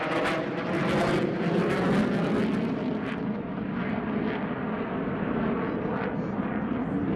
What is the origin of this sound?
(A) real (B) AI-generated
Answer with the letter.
A